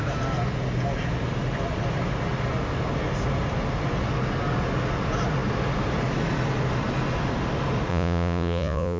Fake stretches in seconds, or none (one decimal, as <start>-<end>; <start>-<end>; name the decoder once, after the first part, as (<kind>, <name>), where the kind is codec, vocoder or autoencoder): 7.9-9.0 (vocoder, Vocos)